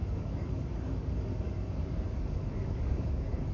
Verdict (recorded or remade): remade